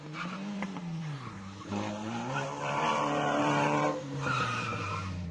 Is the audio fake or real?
fake